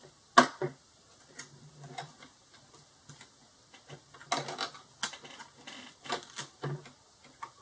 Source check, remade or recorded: recorded